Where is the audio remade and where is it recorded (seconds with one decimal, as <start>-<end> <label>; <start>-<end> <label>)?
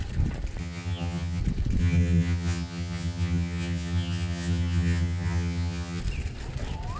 0.0-0.6 recorded; 0.6-1.4 remade; 1.4-1.8 recorded; 1.8-6.0 remade; 6.0-7.0 recorded